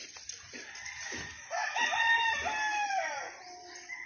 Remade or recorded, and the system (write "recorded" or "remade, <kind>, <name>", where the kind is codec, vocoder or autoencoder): recorded